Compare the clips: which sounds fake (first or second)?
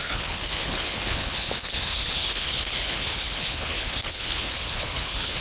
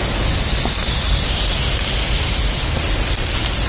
first